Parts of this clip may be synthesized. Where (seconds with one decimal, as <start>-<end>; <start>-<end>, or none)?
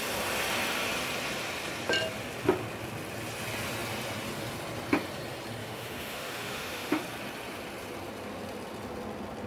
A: 5.6-7.0